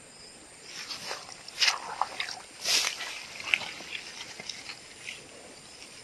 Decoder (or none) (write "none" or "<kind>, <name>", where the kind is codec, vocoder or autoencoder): none